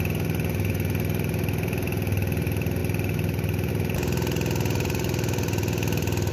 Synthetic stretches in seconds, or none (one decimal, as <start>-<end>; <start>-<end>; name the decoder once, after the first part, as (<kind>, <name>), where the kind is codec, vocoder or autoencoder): none